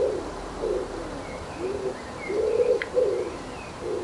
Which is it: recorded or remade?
remade